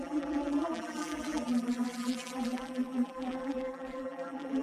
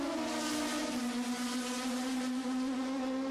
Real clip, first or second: second